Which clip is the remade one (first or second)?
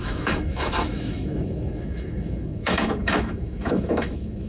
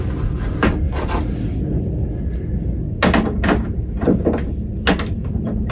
first